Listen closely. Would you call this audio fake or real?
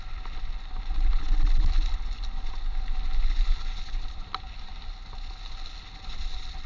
real